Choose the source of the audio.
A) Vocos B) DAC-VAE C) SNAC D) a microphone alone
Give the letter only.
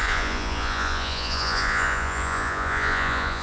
A